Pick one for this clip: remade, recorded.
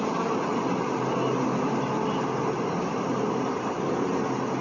recorded